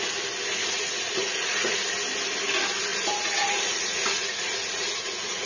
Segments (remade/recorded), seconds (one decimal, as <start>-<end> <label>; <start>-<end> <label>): 0.0-0.6 recorded; 0.6-1.7 remade; 1.7-2.9 recorded; 2.9-5.5 remade